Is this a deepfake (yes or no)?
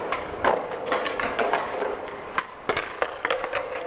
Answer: yes